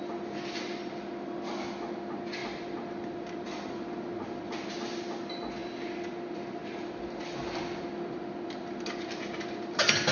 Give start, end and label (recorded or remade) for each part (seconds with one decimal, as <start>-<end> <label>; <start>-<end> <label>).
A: 0.0-10.1 recorded